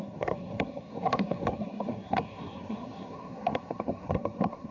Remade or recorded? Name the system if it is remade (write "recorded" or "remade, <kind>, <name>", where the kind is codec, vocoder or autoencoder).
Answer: remade, codec, SNAC